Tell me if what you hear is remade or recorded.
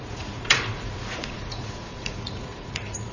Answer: remade